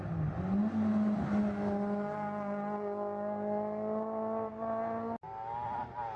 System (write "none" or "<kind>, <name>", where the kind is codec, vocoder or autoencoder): none